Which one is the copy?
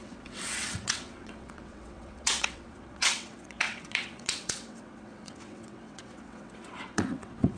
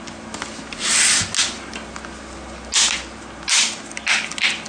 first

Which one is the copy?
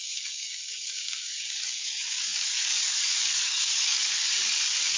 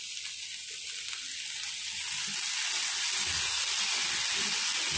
first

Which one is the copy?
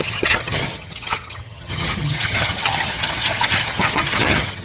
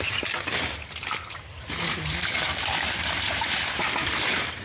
first